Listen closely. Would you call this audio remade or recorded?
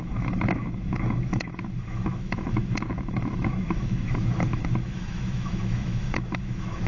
remade